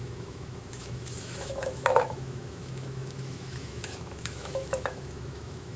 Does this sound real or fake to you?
fake